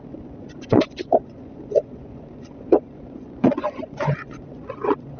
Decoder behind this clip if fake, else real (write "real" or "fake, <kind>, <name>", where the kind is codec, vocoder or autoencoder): fake, vocoder, Vocos